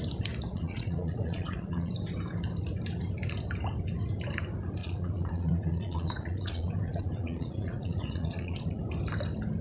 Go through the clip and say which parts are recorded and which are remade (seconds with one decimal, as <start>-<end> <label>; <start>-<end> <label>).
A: 0.0-0.5 recorded; 0.5-1.9 remade; 1.9-4.8 recorded; 4.8-8.8 remade; 8.8-9.6 recorded